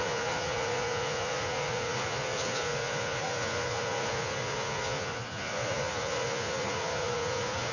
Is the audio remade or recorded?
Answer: remade